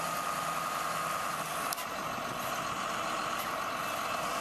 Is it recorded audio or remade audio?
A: recorded